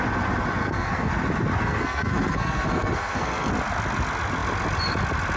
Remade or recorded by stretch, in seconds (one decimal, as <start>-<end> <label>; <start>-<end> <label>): 0.0-0.6 recorded; 0.6-1.1 remade; 1.1-1.6 recorded; 1.6-3.5 remade; 3.5-5.4 recorded

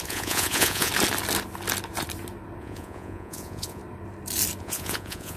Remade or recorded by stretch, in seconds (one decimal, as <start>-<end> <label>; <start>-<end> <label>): 0.0-0.9 remade; 0.9-2.6 recorded; 2.6-3.8 remade; 3.8-4.6 recorded; 4.6-5.4 remade

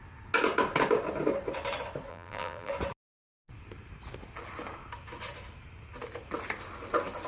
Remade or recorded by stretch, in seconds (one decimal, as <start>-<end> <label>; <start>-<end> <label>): 0.0-2.1 recorded; 2.1-2.7 remade; 2.7-7.3 recorded

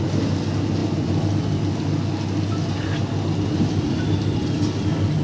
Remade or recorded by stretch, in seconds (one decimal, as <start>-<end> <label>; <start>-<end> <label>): 0.0-5.2 recorded

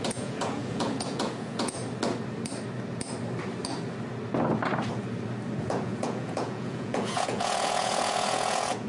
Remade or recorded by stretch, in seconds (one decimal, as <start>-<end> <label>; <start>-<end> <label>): 0.0-1.8 remade; 1.8-5.6 recorded; 5.6-8.9 remade

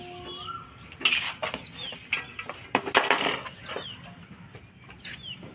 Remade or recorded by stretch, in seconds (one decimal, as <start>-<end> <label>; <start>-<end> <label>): 0.0-5.5 recorded

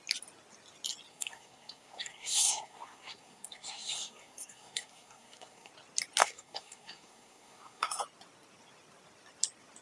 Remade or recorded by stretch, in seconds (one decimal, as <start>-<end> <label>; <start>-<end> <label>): 0.0-1.1 recorded; 1.1-5.7 remade; 5.7-6.2 recorded; 6.2-8.0 remade; 8.0-9.8 recorded